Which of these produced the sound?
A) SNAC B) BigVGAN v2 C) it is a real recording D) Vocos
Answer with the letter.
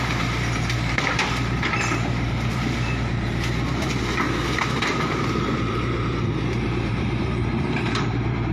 B